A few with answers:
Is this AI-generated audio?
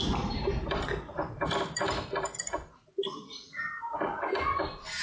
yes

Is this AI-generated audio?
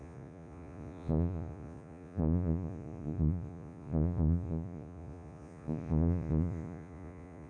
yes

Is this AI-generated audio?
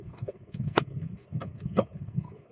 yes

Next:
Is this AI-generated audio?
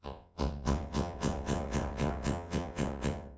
yes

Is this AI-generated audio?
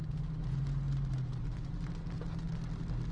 no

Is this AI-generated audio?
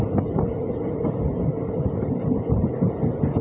no